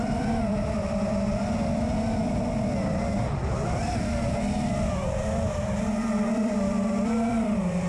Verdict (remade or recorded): remade